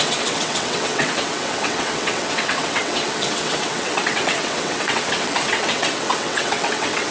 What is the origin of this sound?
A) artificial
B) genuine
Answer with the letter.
A